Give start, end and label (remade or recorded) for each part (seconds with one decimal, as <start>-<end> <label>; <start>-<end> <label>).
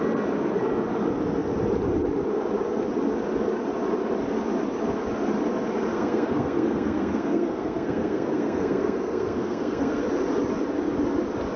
0.0-5.9 recorded; 5.9-10.0 remade; 10.0-11.6 recorded